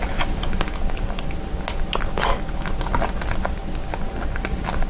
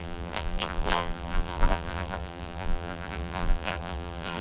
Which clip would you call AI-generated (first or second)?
second